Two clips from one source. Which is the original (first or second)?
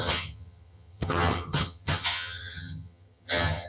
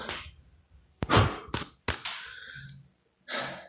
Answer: second